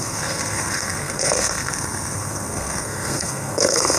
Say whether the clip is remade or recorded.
remade